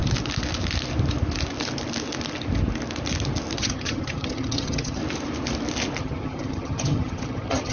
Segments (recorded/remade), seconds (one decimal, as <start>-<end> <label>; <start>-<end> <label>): 0.0-3.6 recorded; 3.6-5.0 remade; 5.0-6.0 recorded; 6.0-7.7 remade